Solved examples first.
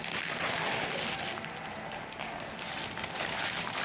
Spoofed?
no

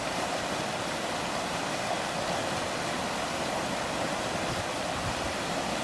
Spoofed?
no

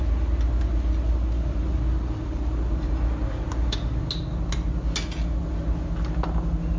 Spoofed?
no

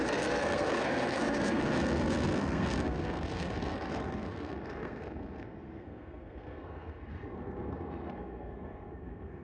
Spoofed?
yes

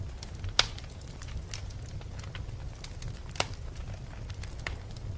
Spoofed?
no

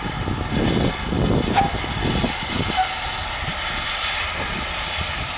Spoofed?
no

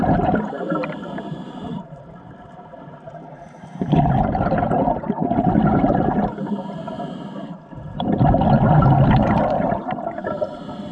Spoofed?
yes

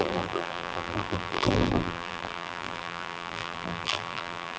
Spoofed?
yes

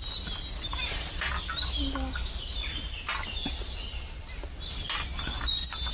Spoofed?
no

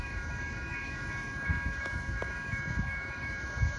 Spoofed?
yes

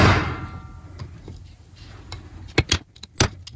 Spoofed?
no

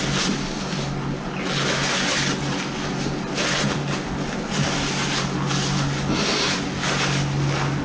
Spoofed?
no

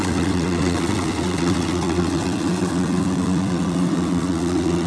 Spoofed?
yes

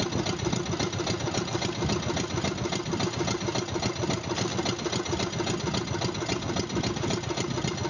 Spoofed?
no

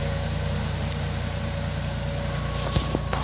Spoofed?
no